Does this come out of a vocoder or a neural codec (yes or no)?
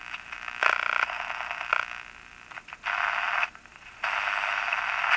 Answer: no